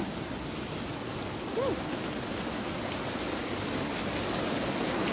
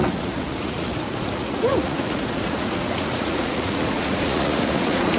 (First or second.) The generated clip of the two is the second